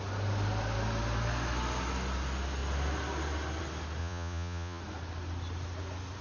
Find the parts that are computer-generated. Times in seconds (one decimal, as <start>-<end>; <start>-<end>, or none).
4.0-4.8